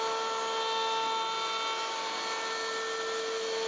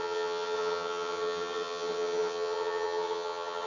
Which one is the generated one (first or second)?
second